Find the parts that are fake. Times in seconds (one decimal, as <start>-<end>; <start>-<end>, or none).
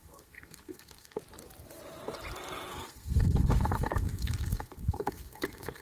0.0-1.2; 2.7-5.8